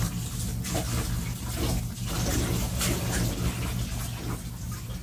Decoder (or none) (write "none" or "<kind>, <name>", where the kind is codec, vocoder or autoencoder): none